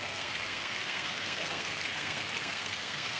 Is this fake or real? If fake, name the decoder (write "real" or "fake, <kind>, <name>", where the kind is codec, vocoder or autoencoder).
fake, codec, SNAC